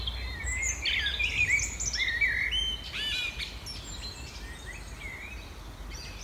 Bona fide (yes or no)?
yes